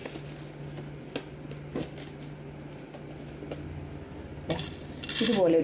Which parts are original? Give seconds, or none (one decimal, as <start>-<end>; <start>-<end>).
0.0-5.6